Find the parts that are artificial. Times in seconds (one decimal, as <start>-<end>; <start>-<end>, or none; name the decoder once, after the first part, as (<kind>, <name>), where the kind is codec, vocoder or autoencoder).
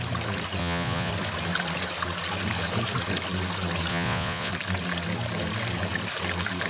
0.6-1.1 (vocoder, Vocos); 3.9-4.5